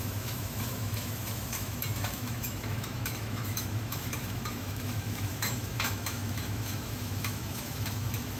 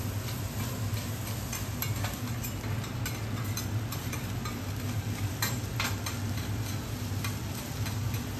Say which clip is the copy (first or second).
first